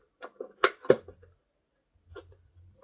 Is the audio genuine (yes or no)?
yes